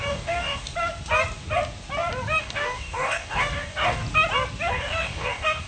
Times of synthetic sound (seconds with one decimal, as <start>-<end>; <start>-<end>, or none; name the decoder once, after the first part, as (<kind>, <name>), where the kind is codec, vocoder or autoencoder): 0.0-0.7 (codec, DAC); 2.4-4.0; 4.7-5.7